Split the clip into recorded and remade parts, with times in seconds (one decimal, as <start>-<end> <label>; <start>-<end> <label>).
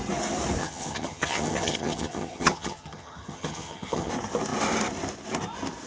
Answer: 0.0-0.6 recorded; 0.6-4.1 remade; 4.1-5.9 recorded